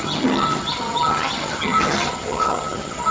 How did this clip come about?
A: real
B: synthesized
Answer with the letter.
B